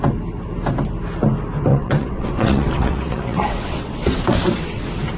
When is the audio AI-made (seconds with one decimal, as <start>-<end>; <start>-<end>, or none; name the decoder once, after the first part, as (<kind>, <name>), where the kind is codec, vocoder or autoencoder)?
1.7-4.8 (vocoder, WaveNeXt)